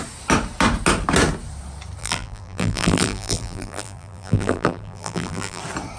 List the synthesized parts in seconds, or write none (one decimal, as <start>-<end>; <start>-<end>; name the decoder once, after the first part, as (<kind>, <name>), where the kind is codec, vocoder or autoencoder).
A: 2.0-5.6 (vocoder, BigVGAN v2)